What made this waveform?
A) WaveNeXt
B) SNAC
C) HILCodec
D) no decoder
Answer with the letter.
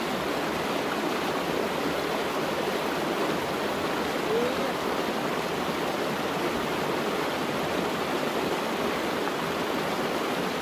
D